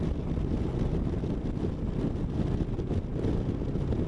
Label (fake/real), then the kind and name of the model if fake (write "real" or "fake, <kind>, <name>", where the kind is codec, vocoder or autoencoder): real